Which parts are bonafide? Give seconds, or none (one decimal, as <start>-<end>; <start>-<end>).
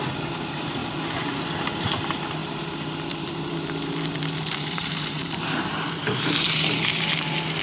none